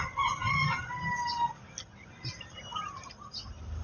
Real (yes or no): yes